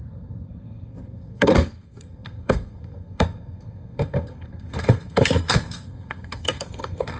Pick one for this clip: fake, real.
fake